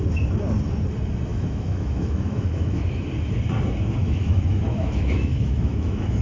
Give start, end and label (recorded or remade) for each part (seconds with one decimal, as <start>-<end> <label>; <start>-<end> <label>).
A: 0.0-1.3 recorded; 1.3-2.9 remade; 2.9-4.0 recorded; 4.0-6.2 remade